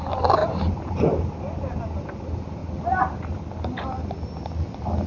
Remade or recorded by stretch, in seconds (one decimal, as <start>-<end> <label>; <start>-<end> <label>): 0.0-0.4 recorded; 0.4-1.2 remade; 1.2-2.6 recorded; 2.6-3.4 remade; 3.4-5.1 recorded